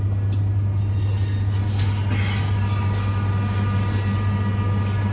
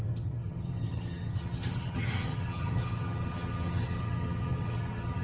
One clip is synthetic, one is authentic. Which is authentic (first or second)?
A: first